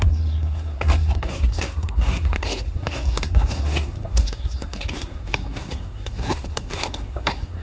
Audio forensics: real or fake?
fake